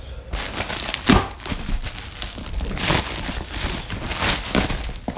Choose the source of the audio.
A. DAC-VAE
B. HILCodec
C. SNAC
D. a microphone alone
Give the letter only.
D